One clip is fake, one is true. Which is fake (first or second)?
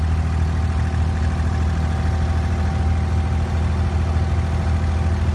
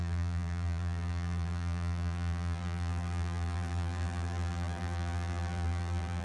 second